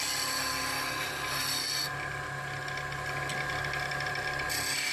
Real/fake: real